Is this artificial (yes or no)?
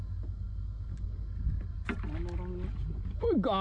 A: no